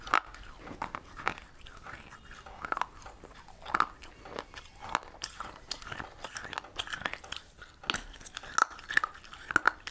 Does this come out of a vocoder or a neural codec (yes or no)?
no